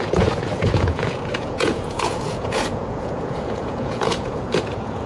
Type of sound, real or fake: fake